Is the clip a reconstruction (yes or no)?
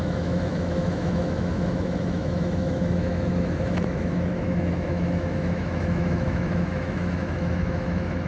yes